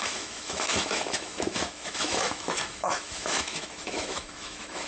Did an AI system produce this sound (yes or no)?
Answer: yes